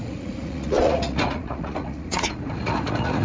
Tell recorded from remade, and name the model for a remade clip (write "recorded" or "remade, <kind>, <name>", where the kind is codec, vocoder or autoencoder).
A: remade, vocoder, Vocos